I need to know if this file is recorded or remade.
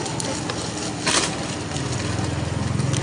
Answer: recorded